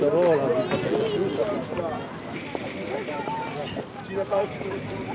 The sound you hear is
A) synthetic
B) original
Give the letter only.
B